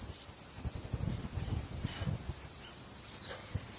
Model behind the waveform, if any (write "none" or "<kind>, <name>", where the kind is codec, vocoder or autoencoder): none